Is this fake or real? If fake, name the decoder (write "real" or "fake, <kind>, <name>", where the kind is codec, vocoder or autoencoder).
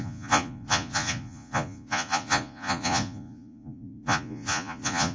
fake, vocoder, Vocos